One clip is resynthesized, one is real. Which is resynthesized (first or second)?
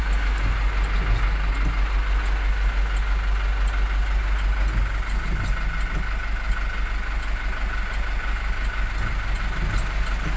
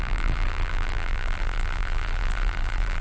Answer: second